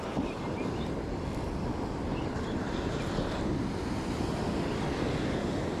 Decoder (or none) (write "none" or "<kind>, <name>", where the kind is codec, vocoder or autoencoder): none